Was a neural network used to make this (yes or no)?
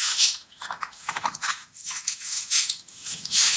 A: yes